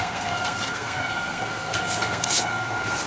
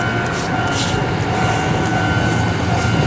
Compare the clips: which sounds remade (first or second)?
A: first